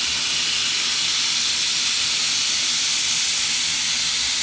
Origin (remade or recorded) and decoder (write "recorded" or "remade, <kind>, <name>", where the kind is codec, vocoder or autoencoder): recorded